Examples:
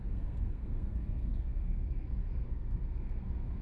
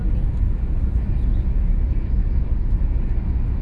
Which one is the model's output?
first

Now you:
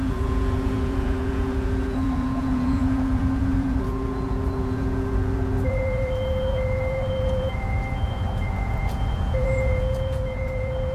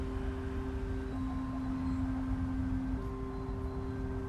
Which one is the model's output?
first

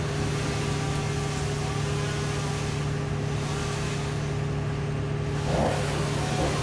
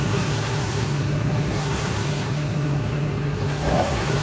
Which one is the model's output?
second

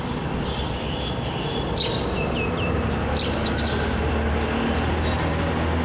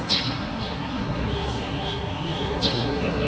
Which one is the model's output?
second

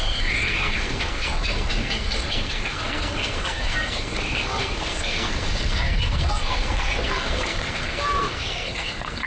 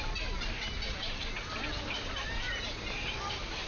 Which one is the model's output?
first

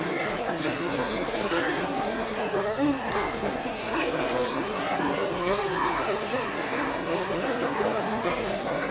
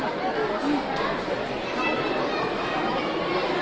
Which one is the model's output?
first